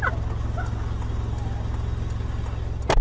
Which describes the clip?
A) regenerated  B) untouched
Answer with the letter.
B